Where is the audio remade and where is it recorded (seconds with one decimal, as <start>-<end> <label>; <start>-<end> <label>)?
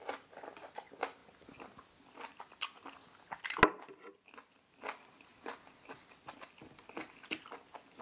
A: 0.0-8.0 recorded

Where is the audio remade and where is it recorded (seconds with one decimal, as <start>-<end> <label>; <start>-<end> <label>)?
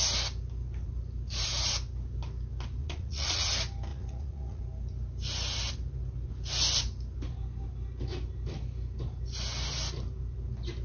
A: 0.0-2.8 recorded; 2.8-3.5 remade; 3.5-3.9 recorded; 3.9-4.6 remade; 4.6-10.8 recorded